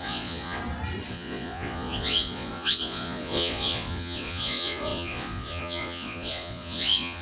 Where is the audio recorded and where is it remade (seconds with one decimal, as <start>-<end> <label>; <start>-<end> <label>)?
0.0-0.6 remade; 0.6-1.1 recorded; 1.1-7.2 remade